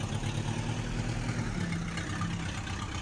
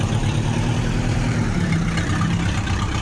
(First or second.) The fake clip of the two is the second